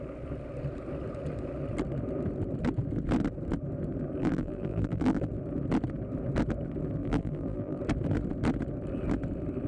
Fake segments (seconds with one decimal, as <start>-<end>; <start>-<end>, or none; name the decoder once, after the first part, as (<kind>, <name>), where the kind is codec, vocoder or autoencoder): 4.2-5.3 (vocoder, BigVGAN v2); 7.0-7.8